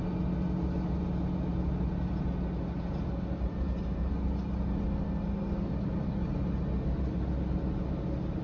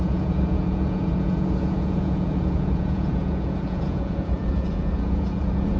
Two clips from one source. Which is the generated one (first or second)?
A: second